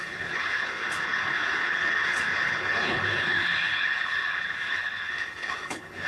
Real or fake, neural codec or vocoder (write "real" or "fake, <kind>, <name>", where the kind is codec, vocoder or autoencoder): fake, codec, HILCodec